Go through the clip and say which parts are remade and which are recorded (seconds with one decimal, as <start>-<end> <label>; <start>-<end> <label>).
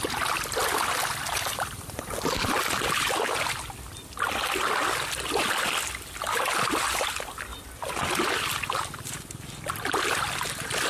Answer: 0.0-10.9 recorded